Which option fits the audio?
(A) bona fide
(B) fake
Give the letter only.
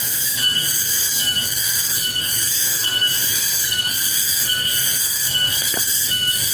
B